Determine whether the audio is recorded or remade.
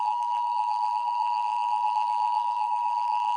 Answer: remade